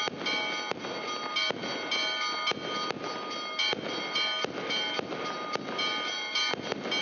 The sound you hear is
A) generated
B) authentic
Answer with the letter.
B